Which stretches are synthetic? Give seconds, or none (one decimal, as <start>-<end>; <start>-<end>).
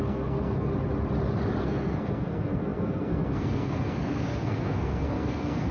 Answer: 0.0-0.7; 1.6-5.7